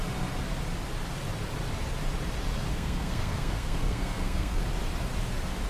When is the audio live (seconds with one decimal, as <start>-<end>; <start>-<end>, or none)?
0.0-2.7; 4.6-5.7